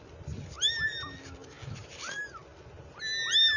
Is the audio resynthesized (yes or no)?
no